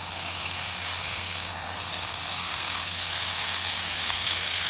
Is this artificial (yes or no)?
yes